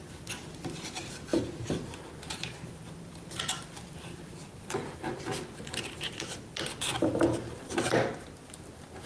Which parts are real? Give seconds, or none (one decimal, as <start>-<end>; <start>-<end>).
1.3-2.3; 6.5-9.1